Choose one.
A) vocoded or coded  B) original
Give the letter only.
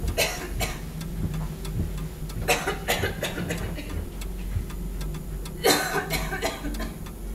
B